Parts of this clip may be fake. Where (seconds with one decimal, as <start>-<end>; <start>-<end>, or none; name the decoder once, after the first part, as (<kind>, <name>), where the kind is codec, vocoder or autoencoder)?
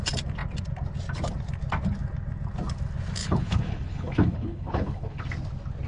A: 3.2-5.2 (codec, HILCodec)